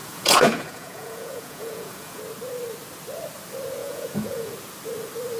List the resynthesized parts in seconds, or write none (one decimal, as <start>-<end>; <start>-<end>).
0.0-2.2; 3.8-4.5